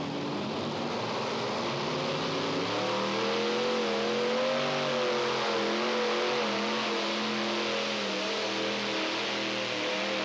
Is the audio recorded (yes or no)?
yes